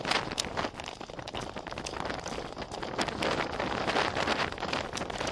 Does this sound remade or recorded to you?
recorded